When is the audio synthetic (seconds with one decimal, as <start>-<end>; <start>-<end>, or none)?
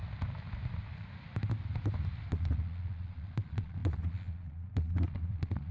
2.3-5.7